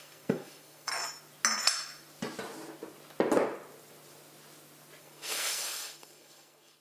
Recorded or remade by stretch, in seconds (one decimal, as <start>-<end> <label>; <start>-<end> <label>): 0.0-0.9 remade; 0.9-5.0 recorded; 5.0-6.8 remade